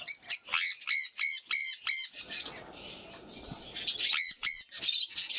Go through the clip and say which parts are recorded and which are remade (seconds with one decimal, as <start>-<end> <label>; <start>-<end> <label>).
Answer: 0.0-5.4 recorded